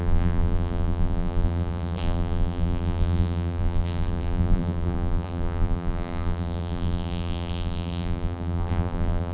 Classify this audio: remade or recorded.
remade